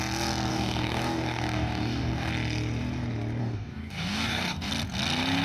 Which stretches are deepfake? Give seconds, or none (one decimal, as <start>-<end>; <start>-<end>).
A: 0.5-2.3; 3.4-4.7